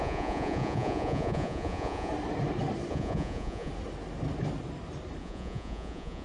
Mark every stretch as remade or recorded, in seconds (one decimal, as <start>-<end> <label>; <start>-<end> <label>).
0.0-2.1 remade; 2.1-2.9 recorded; 2.9-3.7 remade; 3.7-5.2 recorded; 5.2-6.2 remade